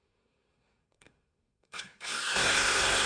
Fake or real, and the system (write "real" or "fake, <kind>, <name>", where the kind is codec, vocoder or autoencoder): fake, codec, SNAC